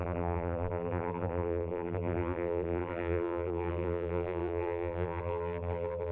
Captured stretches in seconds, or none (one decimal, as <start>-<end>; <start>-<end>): none